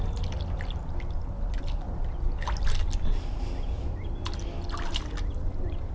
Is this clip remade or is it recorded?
recorded